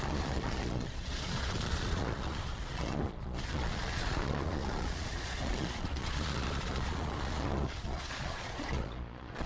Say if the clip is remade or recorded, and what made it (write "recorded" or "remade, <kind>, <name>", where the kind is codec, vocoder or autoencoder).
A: remade, vocoder, Vocos